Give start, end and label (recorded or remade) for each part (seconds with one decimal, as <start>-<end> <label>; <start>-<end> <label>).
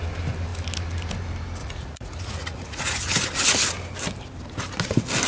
0.0-1.6 recorded; 1.6-3.1 remade; 3.1-5.3 recorded